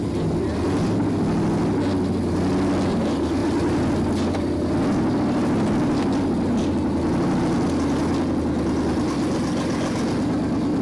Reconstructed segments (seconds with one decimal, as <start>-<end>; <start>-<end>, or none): 3.4-7.4